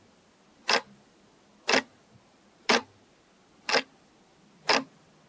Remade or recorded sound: recorded